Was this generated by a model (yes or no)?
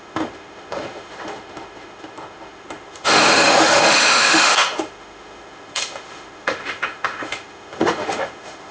yes